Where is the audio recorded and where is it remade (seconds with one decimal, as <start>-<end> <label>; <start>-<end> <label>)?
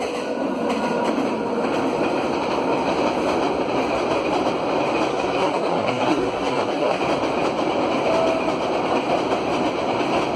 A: 0.0-5.1 recorded; 5.1-7.0 remade; 7.0-10.4 recorded